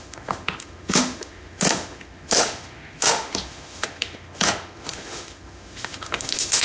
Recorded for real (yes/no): no